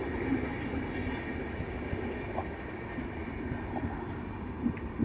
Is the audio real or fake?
real